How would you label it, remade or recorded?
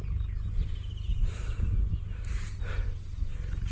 recorded